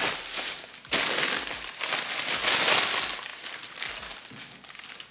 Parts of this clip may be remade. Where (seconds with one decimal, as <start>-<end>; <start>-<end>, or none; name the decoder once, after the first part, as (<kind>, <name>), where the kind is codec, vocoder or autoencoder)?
3.3-3.9 (vocoder, BigVGAN v2)